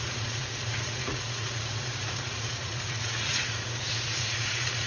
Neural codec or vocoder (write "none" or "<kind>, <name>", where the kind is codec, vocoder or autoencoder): vocoder, Vocos